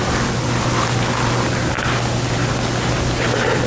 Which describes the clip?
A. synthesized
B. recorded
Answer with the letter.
B